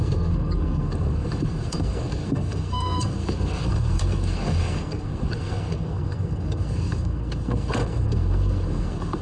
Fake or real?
fake